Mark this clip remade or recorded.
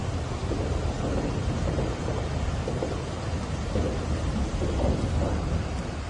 recorded